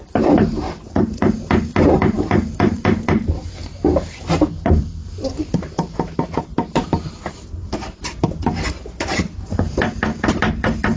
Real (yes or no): no